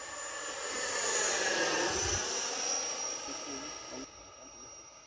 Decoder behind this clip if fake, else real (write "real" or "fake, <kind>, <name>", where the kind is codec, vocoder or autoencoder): real